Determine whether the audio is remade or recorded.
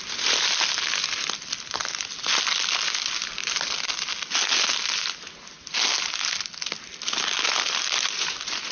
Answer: recorded